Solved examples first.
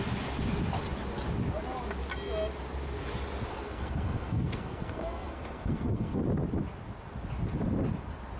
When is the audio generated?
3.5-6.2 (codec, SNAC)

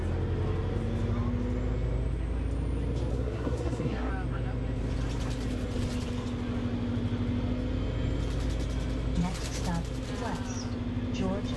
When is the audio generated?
3.1-4.1 (codec, SNAC)

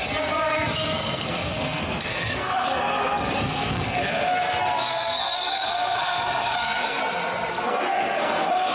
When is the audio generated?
0.0-7.0 (codec, SNAC); 7.5-8.7

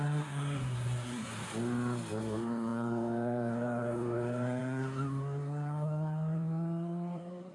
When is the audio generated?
0.0-1.3 (codec, SNAC); 2.2-7.5

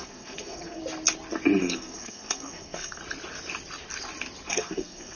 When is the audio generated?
0.0-0.8 (codec, SNAC); 1.6-3.0; 4.5-5.2

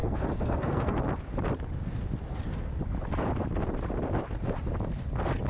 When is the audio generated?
0.0-1.0 (codec, SNAC)